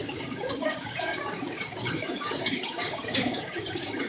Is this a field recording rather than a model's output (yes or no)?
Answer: no